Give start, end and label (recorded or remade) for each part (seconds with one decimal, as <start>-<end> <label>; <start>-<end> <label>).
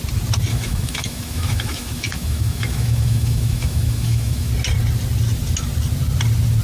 0.0-0.5 recorded; 0.5-4.5 remade; 4.5-6.6 recorded